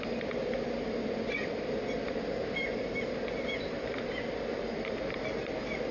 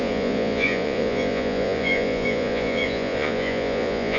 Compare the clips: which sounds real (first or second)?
first